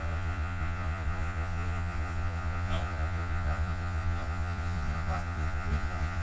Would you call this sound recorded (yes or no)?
no